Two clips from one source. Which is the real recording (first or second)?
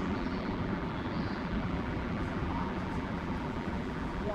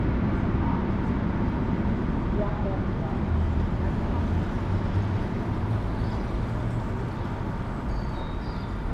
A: second